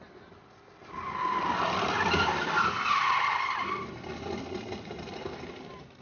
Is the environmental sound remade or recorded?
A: recorded